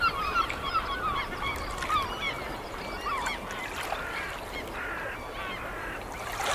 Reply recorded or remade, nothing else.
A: recorded